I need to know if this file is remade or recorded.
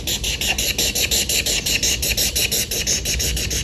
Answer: recorded